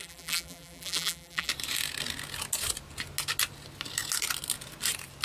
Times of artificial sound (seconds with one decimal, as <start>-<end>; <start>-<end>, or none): 0.0-1.5

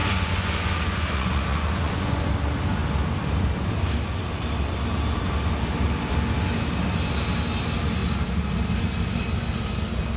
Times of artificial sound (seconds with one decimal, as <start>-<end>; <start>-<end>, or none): 0.0-2.3